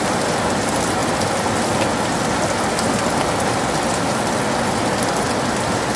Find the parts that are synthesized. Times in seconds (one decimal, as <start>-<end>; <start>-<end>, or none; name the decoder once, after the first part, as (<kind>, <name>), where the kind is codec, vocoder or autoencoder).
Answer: none